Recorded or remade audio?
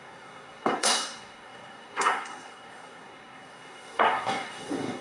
remade